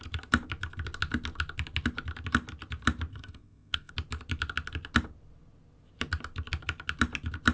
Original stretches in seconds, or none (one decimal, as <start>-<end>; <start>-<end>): 0.0-3.1; 3.9-7.5